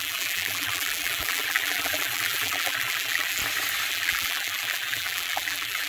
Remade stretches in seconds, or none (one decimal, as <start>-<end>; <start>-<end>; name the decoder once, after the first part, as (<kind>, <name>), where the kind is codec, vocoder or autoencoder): 0.0-3.4 (vocoder, BigVGAN v2); 3.9-5.9